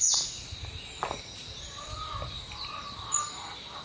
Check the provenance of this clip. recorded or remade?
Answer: recorded